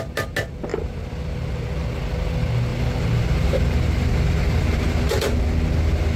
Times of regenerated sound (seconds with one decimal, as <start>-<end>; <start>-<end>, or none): 2.7-5.4